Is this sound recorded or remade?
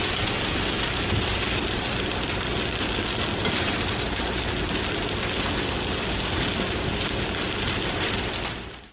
recorded